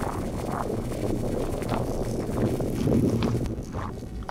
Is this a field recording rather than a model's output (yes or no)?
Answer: yes